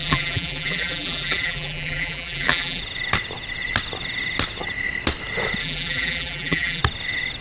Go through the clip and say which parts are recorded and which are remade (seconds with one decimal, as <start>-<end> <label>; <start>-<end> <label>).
0.0-2.8 remade; 2.8-5.6 recorded; 5.6-6.8 remade; 6.8-7.4 recorded